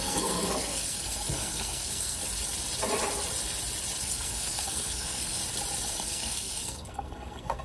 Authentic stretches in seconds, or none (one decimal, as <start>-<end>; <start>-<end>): 2.2-4.0; 5.4-5.9